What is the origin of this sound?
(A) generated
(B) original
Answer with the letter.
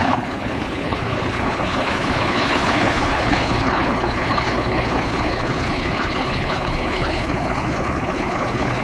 A